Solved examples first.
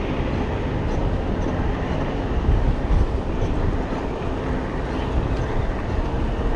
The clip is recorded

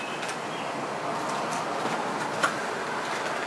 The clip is recorded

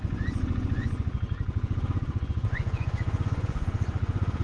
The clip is remade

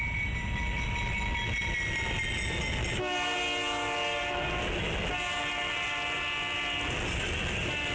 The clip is recorded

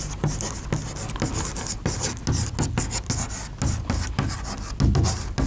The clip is recorded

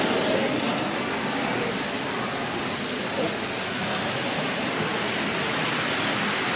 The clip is recorded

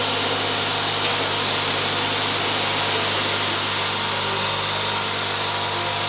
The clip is recorded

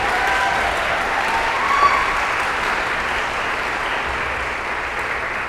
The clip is recorded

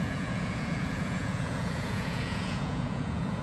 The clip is remade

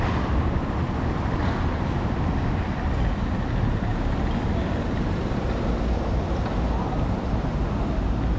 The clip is recorded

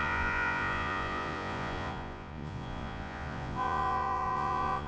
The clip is remade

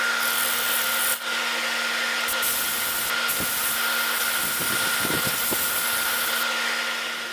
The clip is recorded